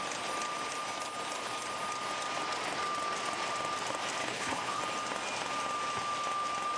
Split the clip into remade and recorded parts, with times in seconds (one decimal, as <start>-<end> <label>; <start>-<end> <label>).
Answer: 0.0-4.2 recorded; 4.2-4.8 remade; 4.8-6.8 recorded